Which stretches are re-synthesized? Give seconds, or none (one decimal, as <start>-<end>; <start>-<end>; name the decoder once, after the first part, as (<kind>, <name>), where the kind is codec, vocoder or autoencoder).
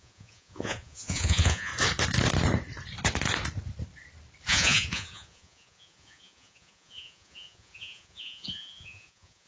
0.0-1.7 (vocoder, Vocos); 4.5-9.5